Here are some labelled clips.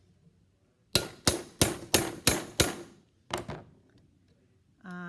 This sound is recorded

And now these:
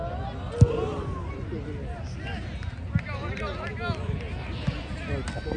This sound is recorded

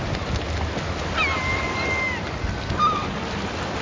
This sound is recorded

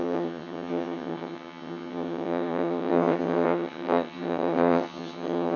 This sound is remade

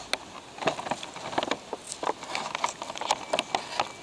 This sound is recorded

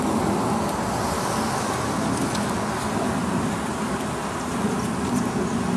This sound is recorded